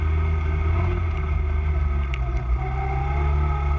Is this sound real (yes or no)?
yes